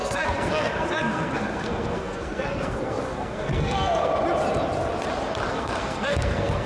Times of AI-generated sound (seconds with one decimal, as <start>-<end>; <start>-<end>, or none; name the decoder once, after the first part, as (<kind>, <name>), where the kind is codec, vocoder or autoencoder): 0.0-4.1 (codec, SNAC); 5.5-6.7